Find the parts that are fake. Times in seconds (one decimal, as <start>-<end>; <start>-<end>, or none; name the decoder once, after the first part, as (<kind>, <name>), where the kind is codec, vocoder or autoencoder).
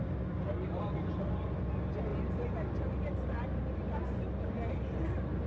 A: none